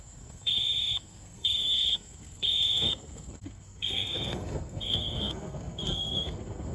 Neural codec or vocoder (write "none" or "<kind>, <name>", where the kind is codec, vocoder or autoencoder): codec, SNAC